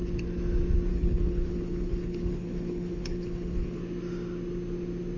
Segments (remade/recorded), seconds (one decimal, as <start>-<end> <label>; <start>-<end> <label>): 0.0-0.9 recorded; 0.9-3.8 remade; 3.8-5.2 recorded